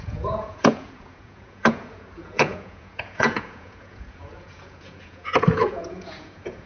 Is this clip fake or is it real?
fake